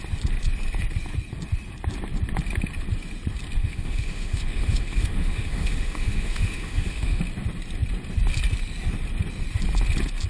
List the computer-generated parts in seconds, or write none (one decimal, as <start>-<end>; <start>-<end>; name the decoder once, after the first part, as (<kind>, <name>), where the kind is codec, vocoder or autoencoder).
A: 3.6-7.2 (autoencoder, DAC-VAE)